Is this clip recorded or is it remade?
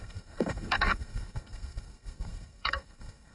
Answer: remade